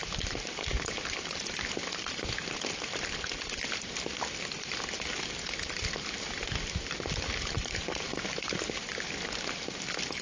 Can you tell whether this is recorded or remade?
recorded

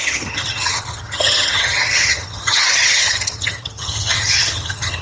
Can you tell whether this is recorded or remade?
remade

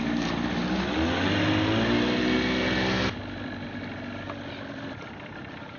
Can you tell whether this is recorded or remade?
recorded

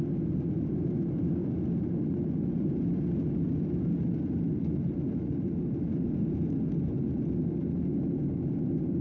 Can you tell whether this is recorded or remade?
recorded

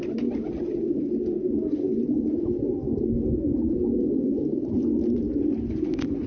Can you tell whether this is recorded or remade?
recorded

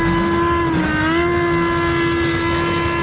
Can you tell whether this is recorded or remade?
recorded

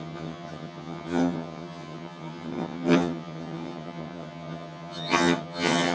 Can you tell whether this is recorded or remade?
remade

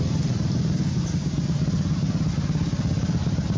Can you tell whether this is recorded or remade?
recorded